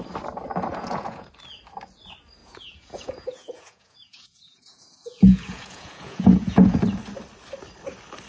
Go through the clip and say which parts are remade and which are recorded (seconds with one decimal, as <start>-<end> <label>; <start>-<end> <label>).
0.0-0.7 recorded; 0.7-1.3 remade; 1.3-2.4 recorded; 2.4-6.8 remade; 6.8-8.3 recorded